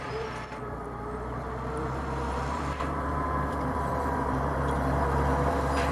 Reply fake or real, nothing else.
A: fake